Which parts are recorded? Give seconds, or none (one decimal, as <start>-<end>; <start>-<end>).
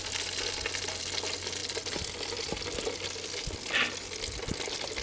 0.0-5.0